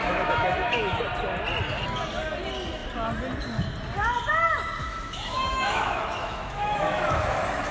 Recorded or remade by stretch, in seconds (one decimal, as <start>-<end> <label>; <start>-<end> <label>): 0.0-1.0 remade; 1.0-4.8 recorded; 4.8-7.7 remade